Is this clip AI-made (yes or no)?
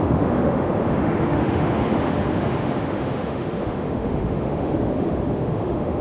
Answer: yes